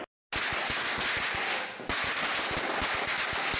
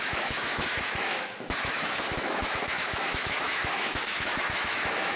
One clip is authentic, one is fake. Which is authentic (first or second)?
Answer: first